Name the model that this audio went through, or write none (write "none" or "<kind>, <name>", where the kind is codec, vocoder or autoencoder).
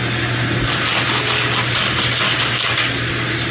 none